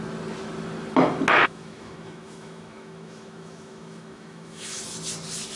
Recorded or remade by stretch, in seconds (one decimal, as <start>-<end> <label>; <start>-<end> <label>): 0.0-1.4 recorded; 1.4-4.8 remade; 4.8-5.6 recorded